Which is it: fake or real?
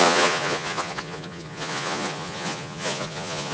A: fake